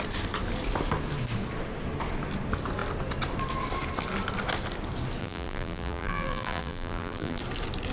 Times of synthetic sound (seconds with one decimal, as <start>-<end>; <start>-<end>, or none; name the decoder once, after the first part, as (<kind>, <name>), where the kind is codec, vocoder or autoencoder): 5.2-7.4 (vocoder, BigVGAN v2)